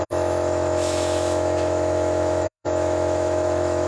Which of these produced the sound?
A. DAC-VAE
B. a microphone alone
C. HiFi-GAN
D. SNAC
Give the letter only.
A